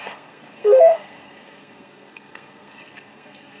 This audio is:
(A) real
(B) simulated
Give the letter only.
B